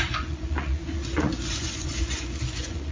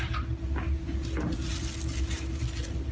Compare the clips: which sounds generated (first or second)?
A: first